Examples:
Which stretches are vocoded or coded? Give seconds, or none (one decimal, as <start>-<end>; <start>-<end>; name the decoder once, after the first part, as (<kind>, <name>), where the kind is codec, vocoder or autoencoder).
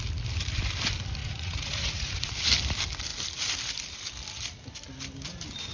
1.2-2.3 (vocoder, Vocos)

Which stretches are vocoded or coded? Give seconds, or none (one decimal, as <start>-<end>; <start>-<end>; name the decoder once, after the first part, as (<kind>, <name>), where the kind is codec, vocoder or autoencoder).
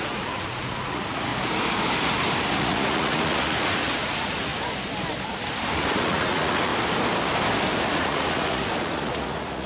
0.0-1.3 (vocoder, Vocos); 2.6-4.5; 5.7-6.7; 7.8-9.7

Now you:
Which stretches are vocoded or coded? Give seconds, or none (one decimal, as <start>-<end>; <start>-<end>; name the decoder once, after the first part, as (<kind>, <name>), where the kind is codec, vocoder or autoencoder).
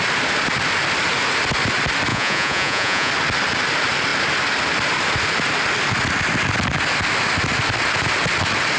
2.1-3.1 (vocoder, Vocos)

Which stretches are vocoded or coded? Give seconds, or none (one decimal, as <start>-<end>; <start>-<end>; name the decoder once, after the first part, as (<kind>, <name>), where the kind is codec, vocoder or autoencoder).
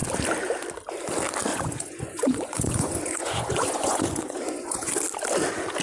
1.5-5.0 (vocoder, Vocos)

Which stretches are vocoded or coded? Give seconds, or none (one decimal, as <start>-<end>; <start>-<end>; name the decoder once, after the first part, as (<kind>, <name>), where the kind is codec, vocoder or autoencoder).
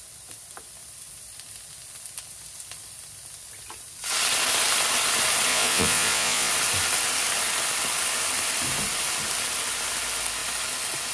5.5-6.5 (vocoder, Vocos)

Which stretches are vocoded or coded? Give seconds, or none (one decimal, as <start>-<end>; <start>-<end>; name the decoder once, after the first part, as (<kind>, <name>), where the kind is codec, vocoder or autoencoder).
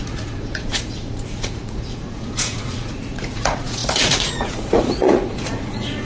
0.0-6.1 (vocoder, Vocos)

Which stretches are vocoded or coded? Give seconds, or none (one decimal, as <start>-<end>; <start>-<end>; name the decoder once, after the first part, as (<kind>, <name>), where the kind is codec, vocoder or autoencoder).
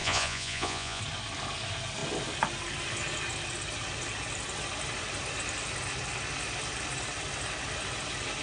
0.0-1.0 (vocoder, Vocos)